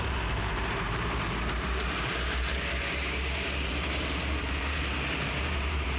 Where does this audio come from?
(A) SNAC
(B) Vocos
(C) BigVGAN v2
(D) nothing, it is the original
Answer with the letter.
C